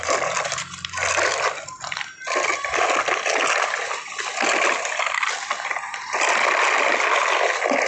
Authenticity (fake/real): real